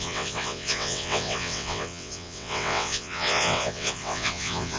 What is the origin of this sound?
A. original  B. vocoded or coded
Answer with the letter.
B